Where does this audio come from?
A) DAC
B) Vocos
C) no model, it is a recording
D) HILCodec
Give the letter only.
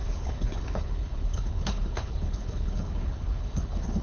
D